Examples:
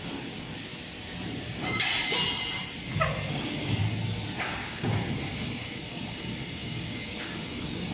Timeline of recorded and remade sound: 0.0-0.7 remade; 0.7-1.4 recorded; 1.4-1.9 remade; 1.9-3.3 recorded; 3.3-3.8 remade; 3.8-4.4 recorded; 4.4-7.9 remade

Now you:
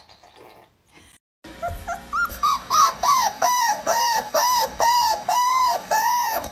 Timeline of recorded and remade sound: 0.0-2.3 recorded; 2.3-6.5 remade

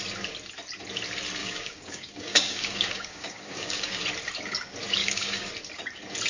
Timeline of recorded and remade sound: 0.0-1.4 recorded; 1.4-4.0 remade; 4.0-5.0 recorded; 5.0-5.5 remade; 5.5-6.3 recorded

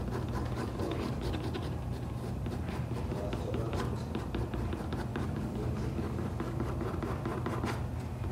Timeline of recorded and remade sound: 0.0-0.4 recorded; 0.4-1.3 remade; 1.3-5.1 recorded; 5.1-6.7 remade; 6.7-8.3 recorded

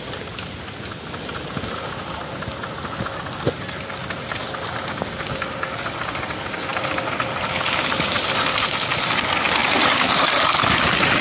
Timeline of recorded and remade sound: 0.0-11.2 recorded

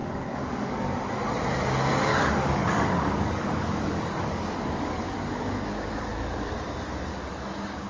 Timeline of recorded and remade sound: 0.0-1.2 remade; 1.2-2.1 recorded; 2.1-6.5 remade; 6.5-7.1 recorded; 7.1-7.9 remade